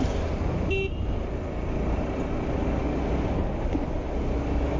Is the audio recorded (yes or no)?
yes